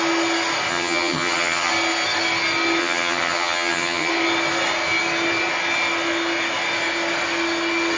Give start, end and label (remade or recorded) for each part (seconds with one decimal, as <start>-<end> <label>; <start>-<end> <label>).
0.0-0.7 recorded; 0.7-1.7 remade; 1.7-2.8 recorded; 2.8-4.1 remade; 4.1-8.0 recorded